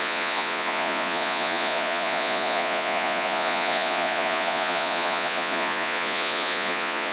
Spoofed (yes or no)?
yes